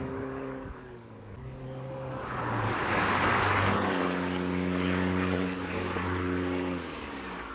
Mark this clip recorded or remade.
remade